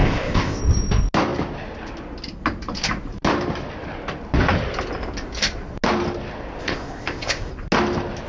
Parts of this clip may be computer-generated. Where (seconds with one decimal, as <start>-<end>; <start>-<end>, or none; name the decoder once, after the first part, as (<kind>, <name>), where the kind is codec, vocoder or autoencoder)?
0.0-0.6 (codec, ZipCodec); 6.6-7.5